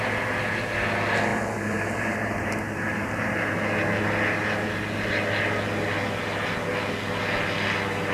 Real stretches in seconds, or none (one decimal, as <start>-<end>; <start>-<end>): 0.0-1.3; 3.5-8.1